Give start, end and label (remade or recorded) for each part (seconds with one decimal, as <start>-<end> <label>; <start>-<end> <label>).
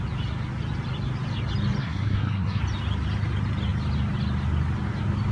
0.0-1.8 recorded; 1.8-2.6 remade; 2.6-5.3 recorded